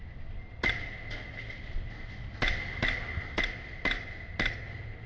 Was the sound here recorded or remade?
recorded